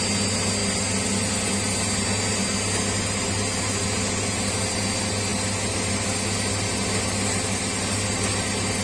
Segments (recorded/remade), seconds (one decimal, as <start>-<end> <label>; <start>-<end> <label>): 0.0-8.8 recorded